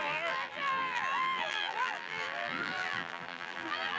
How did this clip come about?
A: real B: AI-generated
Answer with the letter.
B